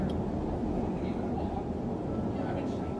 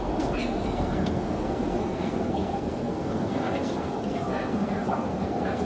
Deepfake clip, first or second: second